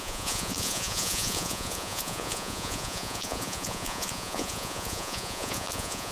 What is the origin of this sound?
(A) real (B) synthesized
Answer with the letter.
B